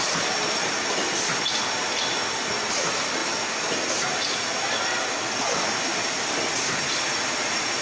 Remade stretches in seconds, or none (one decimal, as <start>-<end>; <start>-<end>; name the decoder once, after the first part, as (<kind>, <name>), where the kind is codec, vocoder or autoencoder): none